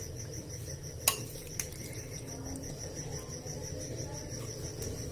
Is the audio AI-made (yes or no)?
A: no